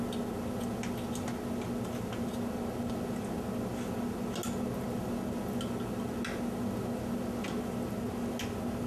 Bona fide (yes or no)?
yes